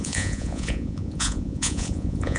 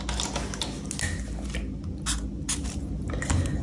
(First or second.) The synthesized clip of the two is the first